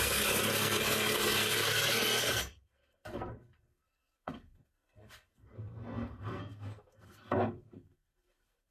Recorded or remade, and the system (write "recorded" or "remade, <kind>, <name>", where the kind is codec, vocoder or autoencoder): remade, codec, SNAC